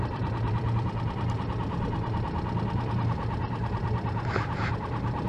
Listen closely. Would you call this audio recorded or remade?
remade